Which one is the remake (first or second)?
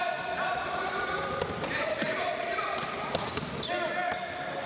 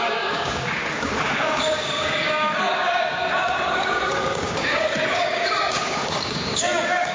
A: second